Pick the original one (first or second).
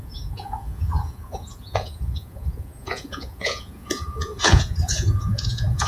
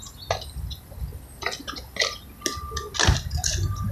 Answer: second